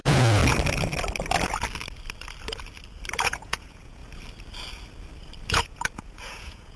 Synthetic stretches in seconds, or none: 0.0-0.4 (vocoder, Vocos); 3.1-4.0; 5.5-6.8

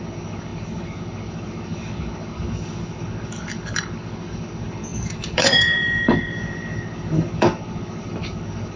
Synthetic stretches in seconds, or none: 0.0-8.8 (codec, DAC)